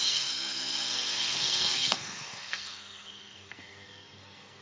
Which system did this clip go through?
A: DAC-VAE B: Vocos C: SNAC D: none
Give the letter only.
C